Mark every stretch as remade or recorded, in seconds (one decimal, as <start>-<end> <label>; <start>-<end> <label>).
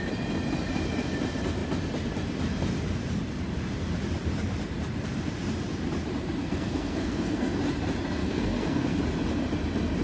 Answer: 0.0-6.4 recorded; 6.4-7.6 remade; 7.6-8.2 recorded; 8.2-9.0 remade; 9.0-10.0 recorded